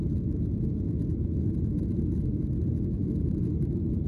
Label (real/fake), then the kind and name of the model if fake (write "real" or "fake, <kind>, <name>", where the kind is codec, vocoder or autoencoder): real